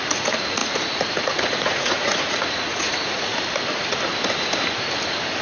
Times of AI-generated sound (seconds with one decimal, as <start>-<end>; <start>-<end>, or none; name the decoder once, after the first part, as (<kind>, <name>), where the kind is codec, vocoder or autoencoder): 0.0-3.3 (vocoder, Vocos)